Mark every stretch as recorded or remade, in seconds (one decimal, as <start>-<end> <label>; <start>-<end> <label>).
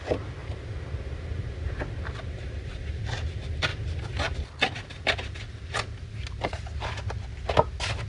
0.0-0.4 recorded; 0.4-3.0 remade; 3.0-3.7 recorded; 3.7-4.4 remade; 4.4-8.1 recorded